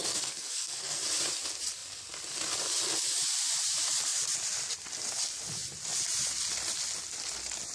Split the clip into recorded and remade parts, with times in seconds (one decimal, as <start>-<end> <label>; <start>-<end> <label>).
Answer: 0.0-1.0 remade; 1.0-7.7 recorded